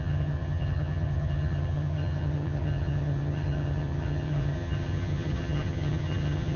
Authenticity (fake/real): fake